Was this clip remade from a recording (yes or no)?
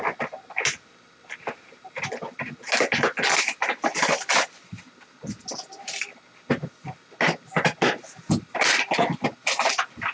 no